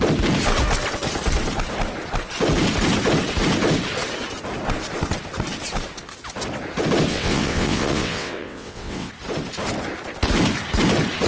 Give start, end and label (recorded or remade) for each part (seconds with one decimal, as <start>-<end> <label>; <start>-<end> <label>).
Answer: 0.0-7.1 recorded; 7.1-9.1 remade; 9.1-11.3 recorded